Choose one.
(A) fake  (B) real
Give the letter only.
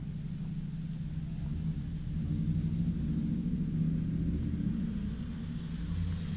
B